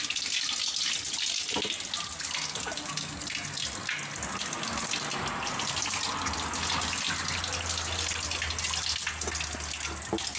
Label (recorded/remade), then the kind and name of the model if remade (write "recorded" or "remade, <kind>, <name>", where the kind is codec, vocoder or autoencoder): recorded